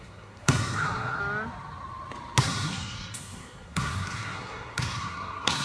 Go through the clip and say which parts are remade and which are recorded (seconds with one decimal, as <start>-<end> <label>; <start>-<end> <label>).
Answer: 0.0-1.2 remade; 1.2-2.4 recorded; 2.4-5.6 remade